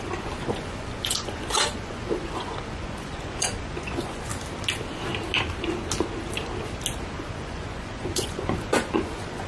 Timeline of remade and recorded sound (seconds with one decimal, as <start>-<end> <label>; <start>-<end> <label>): 0.0-4.3 remade; 4.3-7.2 recorded; 7.2-9.5 remade